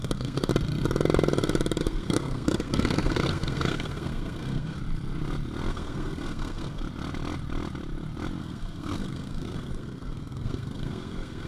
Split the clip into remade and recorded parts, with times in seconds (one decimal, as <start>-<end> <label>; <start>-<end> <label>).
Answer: 0.0-0.5 remade; 0.5-1.8 recorded; 1.8-4.8 remade; 4.8-5.7 recorded; 5.7-6.8 remade; 6.8-8.4 recorded; 8.4-11.5 remade